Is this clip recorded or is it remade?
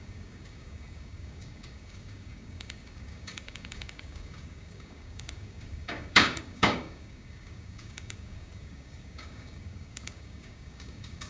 remade